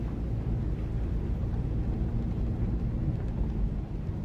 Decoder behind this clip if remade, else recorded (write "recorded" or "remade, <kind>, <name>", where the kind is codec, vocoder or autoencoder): recorded